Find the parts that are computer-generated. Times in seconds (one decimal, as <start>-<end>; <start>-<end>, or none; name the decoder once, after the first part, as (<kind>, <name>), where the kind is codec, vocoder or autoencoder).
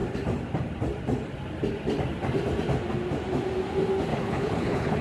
4.1-5.0 (codec, HILCodec)